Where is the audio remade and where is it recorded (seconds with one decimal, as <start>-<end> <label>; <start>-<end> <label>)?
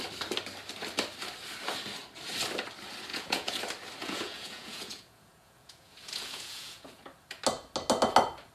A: 0.0-3.1 recorded; 3.1-3.6 remade; 3.6-4.0 recorded; 4.0-7.1 remade; 7.1-8.5 recorded